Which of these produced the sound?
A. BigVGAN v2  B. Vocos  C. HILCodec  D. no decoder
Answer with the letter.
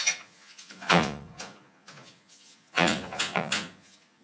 B